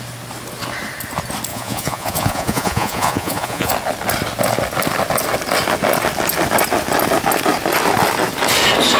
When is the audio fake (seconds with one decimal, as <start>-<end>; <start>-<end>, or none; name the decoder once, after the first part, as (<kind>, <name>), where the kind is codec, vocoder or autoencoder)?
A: 1.5-3.7 (vocoder, Vocos)